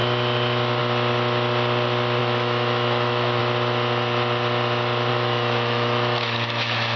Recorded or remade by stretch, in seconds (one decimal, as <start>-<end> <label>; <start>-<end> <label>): 0.0-2.2 recorded; 2.2-3.4 remade; 3.4-5.1 recorded; 5.1-7.0 remade

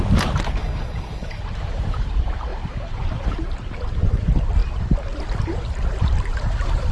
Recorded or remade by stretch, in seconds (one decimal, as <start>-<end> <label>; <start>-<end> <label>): 0.0-0.6 recorded; 0.6-1.4 remade; 1.4-6.9 recorded

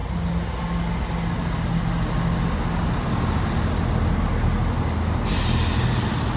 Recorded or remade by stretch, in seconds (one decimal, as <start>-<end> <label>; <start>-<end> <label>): 0.0-6.4 recorded

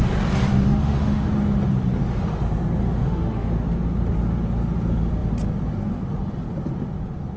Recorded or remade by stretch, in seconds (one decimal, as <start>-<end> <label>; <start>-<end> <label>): 0.0-0.5 recorded; 0.5-1.3 remade; 1.3-2.8 recorded; 2.8-3.5 remade; 3.5-7.4 recorded

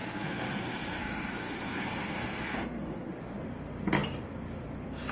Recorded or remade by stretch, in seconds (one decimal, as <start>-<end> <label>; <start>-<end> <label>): 0.0-3.1 remade; 3.1-5.1 recorded

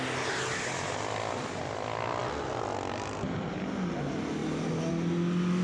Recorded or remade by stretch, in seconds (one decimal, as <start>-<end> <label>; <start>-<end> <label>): 0.0-5.6 recorded